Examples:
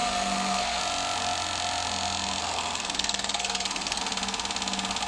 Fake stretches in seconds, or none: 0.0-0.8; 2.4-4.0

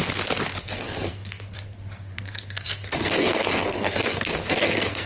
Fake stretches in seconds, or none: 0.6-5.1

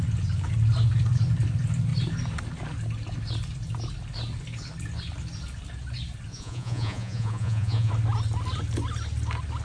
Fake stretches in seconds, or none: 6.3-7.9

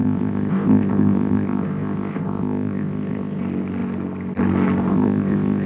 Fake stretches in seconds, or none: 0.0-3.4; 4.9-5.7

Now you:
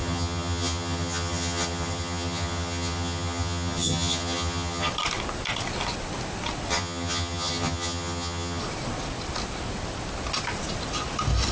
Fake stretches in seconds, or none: 0.0-4.9; 6.7-8.6